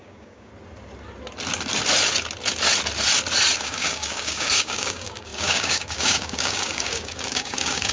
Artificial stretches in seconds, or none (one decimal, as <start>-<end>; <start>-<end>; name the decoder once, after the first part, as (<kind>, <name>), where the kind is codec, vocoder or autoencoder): 0.0-0.5 (codec, DAC); 3.6-7.9